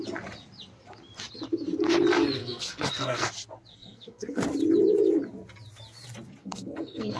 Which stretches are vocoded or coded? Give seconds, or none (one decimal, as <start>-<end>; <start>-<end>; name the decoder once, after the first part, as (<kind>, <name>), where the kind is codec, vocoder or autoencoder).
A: 2.4-3.3 (codec, SNAC); 3.7-4.4; 6.4-7.2